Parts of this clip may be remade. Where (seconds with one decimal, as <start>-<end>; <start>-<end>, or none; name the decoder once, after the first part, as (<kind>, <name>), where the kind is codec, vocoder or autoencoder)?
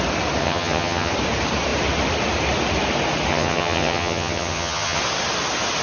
0.4-1.1 (vocoder, HiFi-GAN); 3.3-5.0